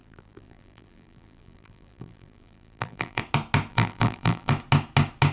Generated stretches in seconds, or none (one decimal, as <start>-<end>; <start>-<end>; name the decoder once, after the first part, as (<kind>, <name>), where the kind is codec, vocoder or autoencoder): 0.0-3.2 (vocoder, BigVGAN v2); 3.7-4.5